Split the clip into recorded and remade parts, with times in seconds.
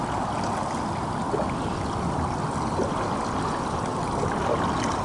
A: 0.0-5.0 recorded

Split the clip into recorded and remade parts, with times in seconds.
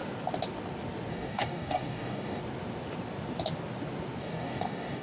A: 0.0-1.1 recorded; 1.1-2.4 remade; 2.4-4.2 recorded; 4.2-5.0 remade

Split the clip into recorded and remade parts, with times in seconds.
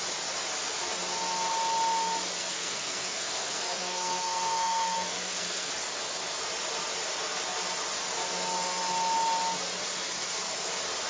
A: 0.0-2.4 recorded; 2.4-5.7 remade; 5.7-11.1 recorded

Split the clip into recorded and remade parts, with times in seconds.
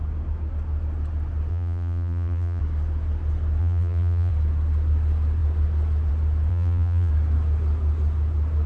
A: 0.0-1.5 recorded; 1.5-2.6 remade; 2.6-3.6 recorded; 3.6-4.3 remade; 4.3-6.5 recorded; 6.5-7.1 remade; 7.1-8.7 recorded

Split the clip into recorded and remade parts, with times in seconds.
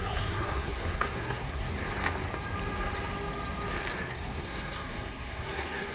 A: 0.0-1.7 remade; 1.7-4.1 recorded; 4.1-5.9 remade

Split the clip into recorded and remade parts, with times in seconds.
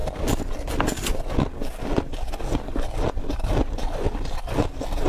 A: 0.0-5.1 recorded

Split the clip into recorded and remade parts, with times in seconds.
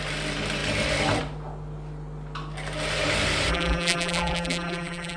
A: 0.0-3.5 recorded; 3.5-5.2 remade